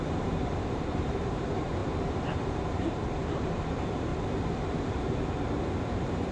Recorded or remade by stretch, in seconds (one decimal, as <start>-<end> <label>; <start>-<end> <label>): 0.0-4.1 remade; 4.1-5.8 recorded; 5.8-6.3 remade